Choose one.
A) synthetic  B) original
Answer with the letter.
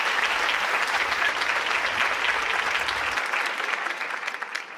B